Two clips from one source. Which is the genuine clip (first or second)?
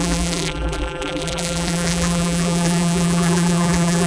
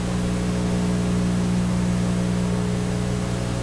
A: second